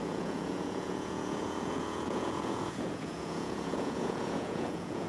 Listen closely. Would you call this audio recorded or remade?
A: remade